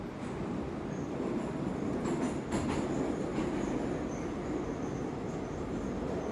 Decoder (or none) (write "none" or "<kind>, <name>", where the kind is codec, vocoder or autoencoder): none